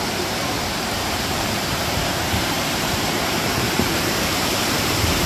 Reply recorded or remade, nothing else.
remade